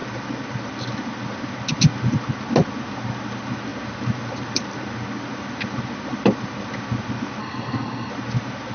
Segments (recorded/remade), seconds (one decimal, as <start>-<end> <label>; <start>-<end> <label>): 0.0-7.4 recorded; 7.4-8.1 remade; 8.1-8.7 recorded